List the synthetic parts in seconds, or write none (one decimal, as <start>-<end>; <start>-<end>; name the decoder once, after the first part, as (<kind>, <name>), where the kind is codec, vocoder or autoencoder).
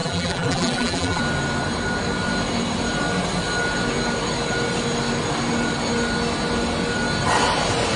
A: 0.0-1.2 (vocoder, BigVGAN v2)